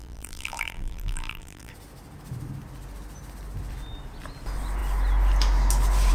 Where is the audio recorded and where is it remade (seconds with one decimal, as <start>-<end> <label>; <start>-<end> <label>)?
0.0-1.7 remade; 1.7-6.1 recorded

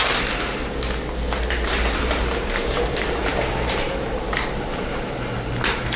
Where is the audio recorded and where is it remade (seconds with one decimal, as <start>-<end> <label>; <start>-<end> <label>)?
0.0-1.7 recorded; 1.7-6.0 remade